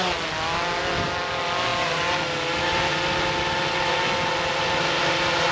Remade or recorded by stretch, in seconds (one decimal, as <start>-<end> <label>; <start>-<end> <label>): 0.0-5.5 recorded